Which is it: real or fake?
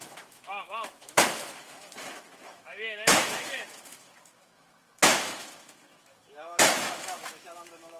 fake